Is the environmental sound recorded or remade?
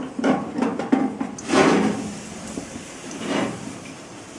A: remade